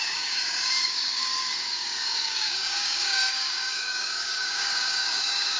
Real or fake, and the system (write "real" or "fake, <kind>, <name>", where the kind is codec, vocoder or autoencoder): fake, codec, DAC